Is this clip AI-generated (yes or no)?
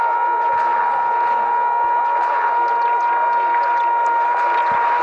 no